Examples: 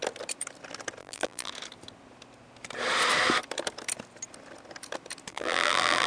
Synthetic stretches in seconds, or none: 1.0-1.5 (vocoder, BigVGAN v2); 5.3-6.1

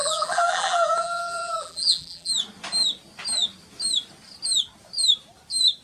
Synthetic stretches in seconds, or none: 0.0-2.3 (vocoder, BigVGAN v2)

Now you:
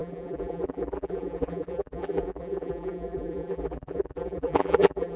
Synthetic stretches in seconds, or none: 0.0-5.2 (vocoder, BigVGAN v2)

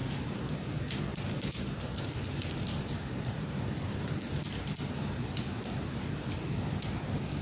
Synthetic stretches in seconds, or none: 0.0-0.7 (vocoder, BigVGAN v2); 1.1-4.1

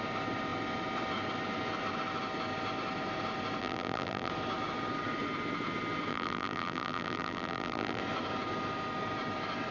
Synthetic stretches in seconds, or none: 3.6-4.3 (vocoder, BigVGAN v2); 6.1-8.0

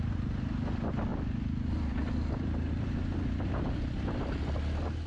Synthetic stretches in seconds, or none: none